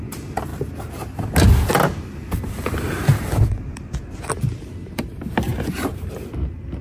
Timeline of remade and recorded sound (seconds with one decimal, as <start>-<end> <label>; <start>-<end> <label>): 0.0-0.5 remade; 0.5-4.6 recorded; 4.6-6.8 remade